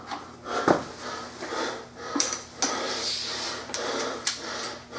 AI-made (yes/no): no